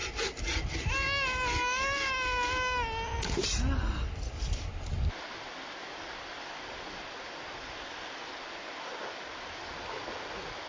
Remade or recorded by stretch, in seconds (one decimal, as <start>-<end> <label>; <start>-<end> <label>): 0.0-10.7 recorded